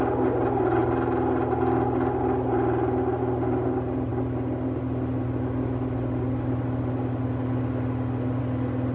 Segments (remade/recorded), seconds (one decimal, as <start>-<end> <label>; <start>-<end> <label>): 0.0-8.9 recorded